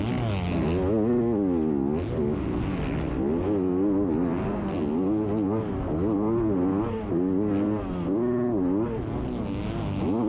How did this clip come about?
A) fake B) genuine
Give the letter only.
B